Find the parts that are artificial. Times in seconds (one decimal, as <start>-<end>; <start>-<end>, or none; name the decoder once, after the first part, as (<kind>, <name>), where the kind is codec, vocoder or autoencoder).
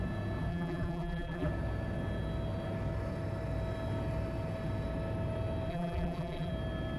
0.5-1.5 (vocoder, BigVGAN v2); 5.7-6.5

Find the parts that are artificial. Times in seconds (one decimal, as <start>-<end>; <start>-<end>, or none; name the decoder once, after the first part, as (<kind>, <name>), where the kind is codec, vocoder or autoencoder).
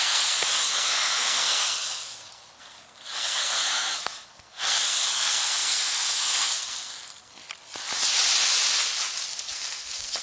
0.0-7.4 (codec, SNAC); 9.3-10.2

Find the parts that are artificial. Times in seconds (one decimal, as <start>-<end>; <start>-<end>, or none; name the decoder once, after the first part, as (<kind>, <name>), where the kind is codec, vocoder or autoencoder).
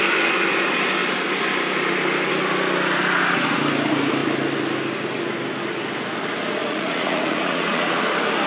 6.6-8.0 (vocoder, Vocos)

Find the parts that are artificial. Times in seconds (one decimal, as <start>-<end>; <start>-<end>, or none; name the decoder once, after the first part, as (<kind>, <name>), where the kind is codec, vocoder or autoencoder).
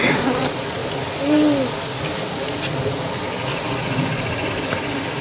3.5-4.5 (vocoder, Vocos)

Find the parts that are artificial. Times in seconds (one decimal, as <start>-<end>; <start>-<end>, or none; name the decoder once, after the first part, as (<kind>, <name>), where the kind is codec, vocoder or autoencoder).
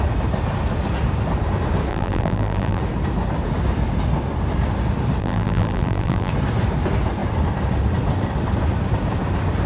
1.9-2.8 (vocoder, BigVGAN v2); 5.2-6.3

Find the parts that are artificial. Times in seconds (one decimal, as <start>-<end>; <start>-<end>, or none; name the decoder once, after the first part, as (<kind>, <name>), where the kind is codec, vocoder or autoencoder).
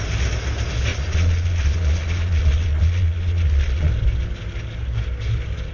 0.9-3.9 (vocoder, Vocos)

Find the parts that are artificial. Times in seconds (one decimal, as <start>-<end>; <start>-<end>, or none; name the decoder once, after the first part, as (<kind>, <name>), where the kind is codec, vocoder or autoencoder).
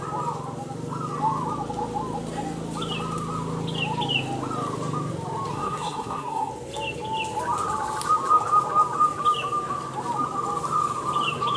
5.5-6.5 (codec, SNAC)